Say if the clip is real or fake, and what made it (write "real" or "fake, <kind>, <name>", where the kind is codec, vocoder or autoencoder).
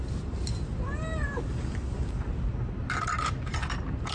real